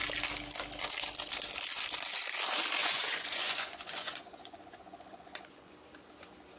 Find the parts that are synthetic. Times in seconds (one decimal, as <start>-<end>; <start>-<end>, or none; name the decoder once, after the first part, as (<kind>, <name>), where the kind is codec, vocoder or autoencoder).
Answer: 2.8-5.7 (vocoder, Vocos)